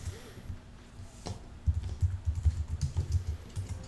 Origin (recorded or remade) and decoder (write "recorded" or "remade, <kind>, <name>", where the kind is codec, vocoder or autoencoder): recorded